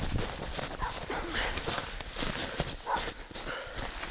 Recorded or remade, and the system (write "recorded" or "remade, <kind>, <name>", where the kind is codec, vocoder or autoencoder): remade, vocoder, BigVGAN v2